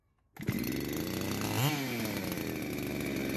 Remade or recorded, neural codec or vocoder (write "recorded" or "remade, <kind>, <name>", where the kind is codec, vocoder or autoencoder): recorded